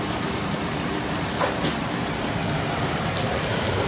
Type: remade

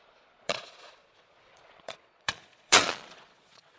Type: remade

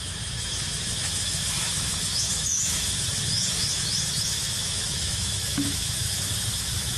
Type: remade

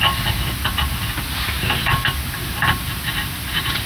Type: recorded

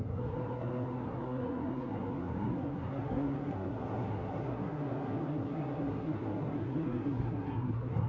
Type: remade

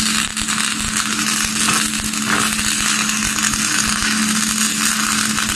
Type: recorded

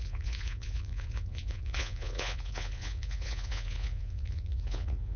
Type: remade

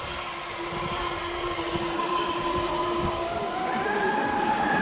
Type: recorded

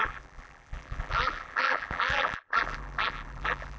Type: remade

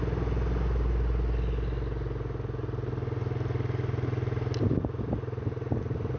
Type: recorded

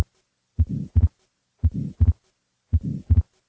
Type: recorded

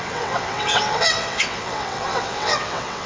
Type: remade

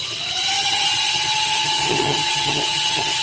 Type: remade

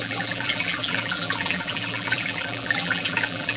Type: remade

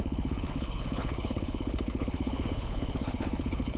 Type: remade